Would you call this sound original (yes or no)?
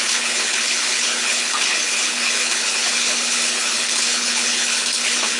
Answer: no